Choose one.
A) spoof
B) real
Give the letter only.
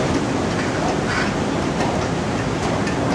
B